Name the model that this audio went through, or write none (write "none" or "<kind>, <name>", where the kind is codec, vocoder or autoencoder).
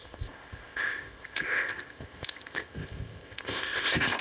codec, ZipCodec